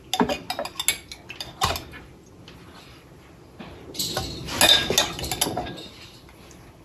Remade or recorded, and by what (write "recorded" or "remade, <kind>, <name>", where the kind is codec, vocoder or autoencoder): recorded